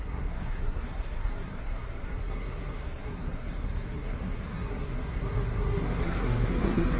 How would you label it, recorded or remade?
remade